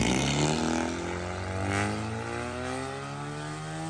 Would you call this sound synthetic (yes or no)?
no